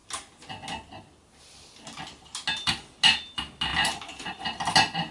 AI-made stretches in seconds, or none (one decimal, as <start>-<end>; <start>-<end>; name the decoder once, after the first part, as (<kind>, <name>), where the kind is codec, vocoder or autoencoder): none